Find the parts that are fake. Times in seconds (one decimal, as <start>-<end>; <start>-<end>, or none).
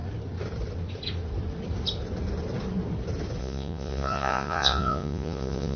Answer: 3.4-5.8